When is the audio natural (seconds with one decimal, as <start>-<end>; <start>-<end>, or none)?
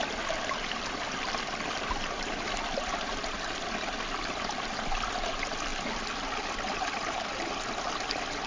0.0-8.5